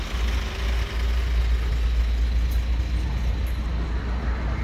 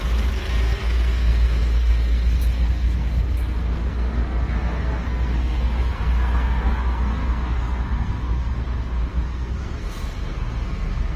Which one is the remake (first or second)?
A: second